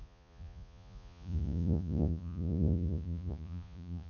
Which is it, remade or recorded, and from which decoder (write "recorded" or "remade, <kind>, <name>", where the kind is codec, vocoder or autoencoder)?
remade, vocoder, Vocos